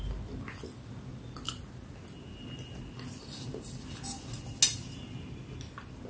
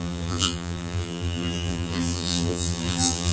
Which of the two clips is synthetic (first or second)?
second